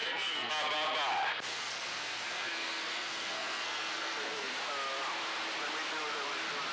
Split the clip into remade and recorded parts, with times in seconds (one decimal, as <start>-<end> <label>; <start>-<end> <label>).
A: 0.0-0.5 remade; 0.5-1.5 recorded; 1.5-4.5 remade; 4.5-6.7 recorded